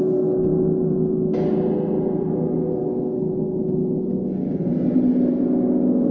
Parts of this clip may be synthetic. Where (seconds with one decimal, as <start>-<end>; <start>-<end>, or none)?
none